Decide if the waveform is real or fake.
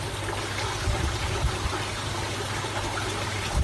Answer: real